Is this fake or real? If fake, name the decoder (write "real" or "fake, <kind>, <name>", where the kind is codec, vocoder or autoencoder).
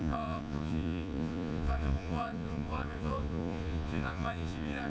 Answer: fake, vocoder, Vocos